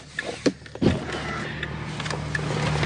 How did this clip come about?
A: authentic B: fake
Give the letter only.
A